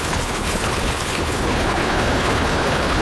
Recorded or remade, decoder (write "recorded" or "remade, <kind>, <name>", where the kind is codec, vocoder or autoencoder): remade, codec, HILCodec